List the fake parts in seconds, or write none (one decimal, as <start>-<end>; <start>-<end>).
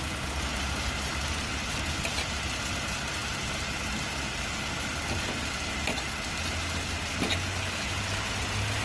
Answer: 0.5-1.9